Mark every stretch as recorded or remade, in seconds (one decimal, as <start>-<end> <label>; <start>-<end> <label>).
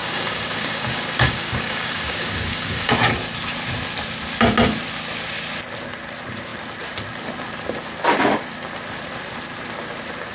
0.0-2.9 remade; 2.9-10.3 recorded